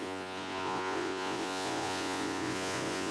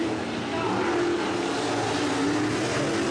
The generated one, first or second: first